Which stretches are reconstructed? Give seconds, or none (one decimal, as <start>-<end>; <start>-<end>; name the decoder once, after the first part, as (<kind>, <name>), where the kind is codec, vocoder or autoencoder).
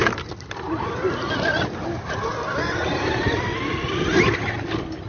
none